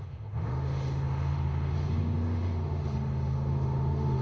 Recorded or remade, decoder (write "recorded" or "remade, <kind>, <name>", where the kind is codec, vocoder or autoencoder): remade, autoencoder, DAC-VAE